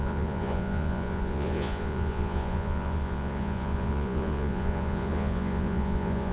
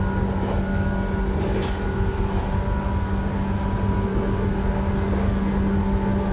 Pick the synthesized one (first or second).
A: first